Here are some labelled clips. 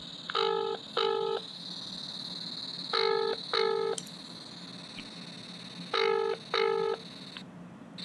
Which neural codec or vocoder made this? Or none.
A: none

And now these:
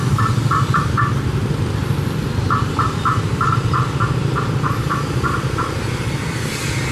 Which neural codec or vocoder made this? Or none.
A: vocoder, BigVGAN v2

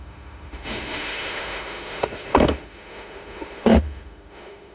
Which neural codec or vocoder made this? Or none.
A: autoencoder, DAC-VAE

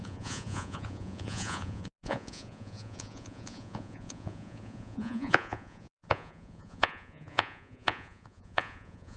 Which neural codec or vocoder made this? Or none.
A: vocoder, Vocos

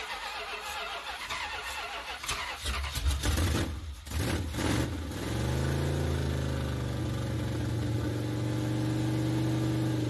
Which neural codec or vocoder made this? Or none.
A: none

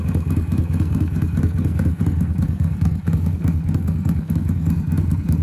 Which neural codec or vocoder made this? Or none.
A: codec, SNAC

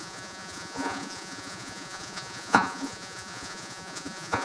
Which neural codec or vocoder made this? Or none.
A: vocoder, Vocos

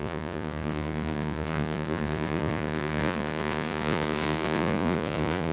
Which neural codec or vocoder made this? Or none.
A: vocoder, Vocos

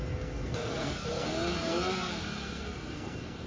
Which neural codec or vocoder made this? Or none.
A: codec, SNAC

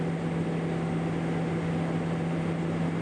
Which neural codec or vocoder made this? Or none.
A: none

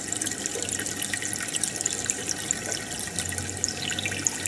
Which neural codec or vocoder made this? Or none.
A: none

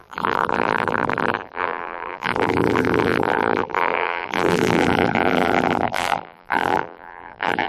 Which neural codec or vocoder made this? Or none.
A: vocoder, BigVGAN v2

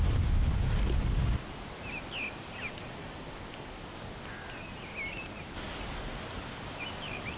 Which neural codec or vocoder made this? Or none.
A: none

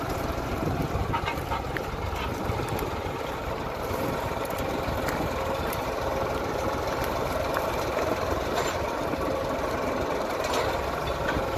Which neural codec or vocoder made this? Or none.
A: none